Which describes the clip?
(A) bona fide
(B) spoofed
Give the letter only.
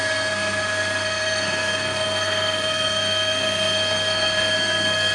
B